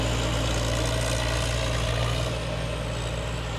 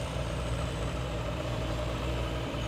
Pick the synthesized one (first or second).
second